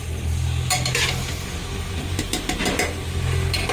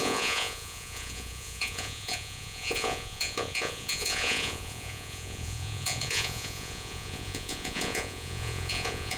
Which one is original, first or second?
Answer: first